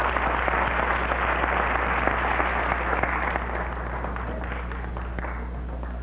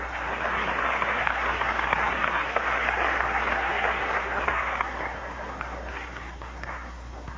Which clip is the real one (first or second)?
first